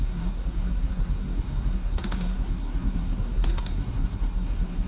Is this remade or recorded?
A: remade